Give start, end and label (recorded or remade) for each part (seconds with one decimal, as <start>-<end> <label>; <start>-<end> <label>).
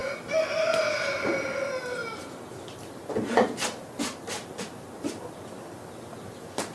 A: 0.0-6.7 recorded